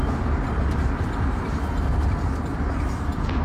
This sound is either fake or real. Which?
real